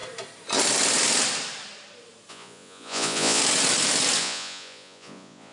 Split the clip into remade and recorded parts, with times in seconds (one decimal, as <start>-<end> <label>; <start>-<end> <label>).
0.0-2.3 recorded; 2.3-3.4 remade; 3.4-4.2 recorded; 4.2-5.5 remade